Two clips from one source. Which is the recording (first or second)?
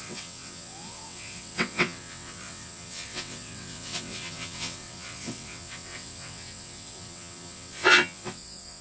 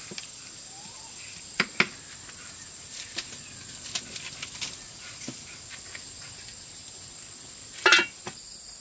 second